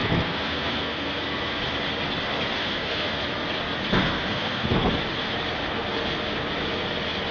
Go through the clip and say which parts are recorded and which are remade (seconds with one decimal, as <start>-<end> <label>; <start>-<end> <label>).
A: 0.0-1.6 remade; 1.6-2.6 recorded; 2.6-3.2 remade; 3.2-4.0 recorded; 4.0-4.9 remade; 4.9-7.3 recorded